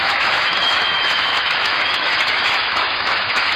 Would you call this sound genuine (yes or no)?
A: no